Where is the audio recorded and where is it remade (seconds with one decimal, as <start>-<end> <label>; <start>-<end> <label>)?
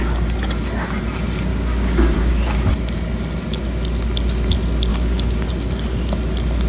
0.0-1.5 recorded; 1.5-2.7 remade; 2.7-4.9 recorded; 4.9-5.5 remade; 5.5-6.7 recorded